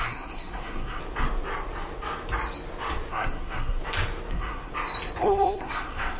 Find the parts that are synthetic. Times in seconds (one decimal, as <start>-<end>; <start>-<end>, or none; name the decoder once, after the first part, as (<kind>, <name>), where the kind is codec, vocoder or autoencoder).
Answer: 0.0-1.0 (codec, SNAC); 3.1-3.8; 4.3-4.7; 5.2-6.2